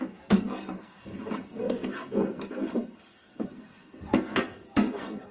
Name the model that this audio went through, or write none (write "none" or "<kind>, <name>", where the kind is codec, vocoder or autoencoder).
codec, SNAC